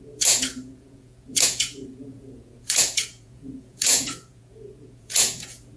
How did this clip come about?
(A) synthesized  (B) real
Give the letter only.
A